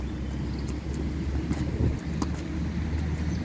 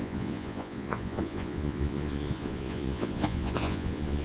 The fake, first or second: second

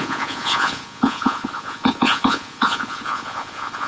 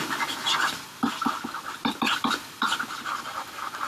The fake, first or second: first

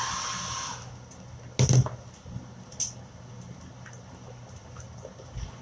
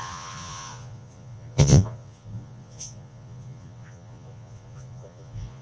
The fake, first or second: second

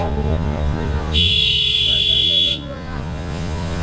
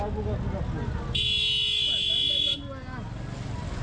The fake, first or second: first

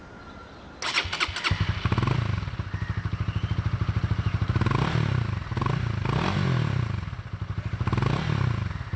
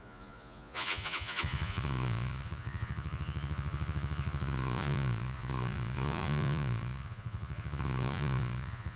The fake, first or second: second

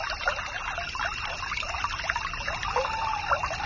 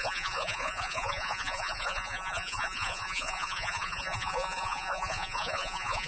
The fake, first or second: second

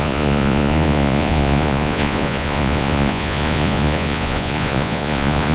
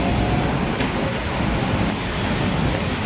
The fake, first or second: first